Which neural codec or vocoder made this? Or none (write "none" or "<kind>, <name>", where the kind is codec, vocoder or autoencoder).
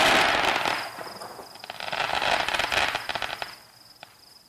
none